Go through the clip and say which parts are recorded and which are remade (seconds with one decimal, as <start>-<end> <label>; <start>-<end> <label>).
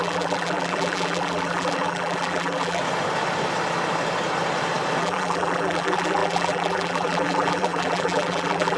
0.0-2.8 remade; 2.8-5.0 recorded; 5.0-8.8 remade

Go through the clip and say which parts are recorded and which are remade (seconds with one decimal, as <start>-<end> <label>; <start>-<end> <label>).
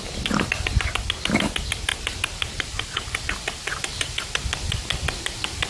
0.0-1.9 recorded; 1.9-3.2 remade; 3.2-5.7 recorded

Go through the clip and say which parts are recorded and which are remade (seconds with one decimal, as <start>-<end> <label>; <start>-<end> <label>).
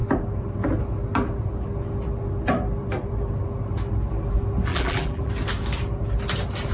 0.0-4.7 recorded; 4.7-5.3 remade; 5.3-6.7 recorded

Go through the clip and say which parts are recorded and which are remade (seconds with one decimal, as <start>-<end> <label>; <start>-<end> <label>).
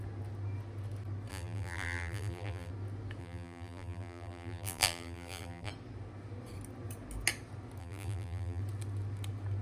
0.0-1.3 recorded; 1.3-2.7 remade; 2.7-3.2 recorded; 3.2-5.7 remade; 5.7-7.8 recorded; 7.8-8.6 remade; 8.6-9.6 recorded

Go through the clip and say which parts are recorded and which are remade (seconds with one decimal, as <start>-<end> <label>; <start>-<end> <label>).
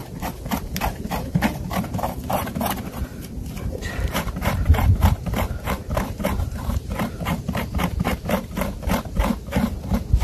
0.0-0.6 recorded; 0.6-10.2 remade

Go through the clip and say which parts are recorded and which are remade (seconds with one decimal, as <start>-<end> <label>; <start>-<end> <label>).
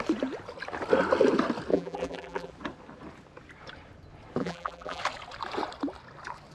0.0-1.7 recorded; 1.7-2.5 remade; 2.5-4.4 recorded; 4.4-5.0 remade; 5.0-6.5 recorded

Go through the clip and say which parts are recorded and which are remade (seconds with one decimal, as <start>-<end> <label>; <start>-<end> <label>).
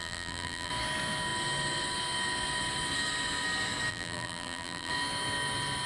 0.0-0.7 remade; 0.7-3.9 recorded; 3.9-4.9 remade; 4.9-5.9 recorded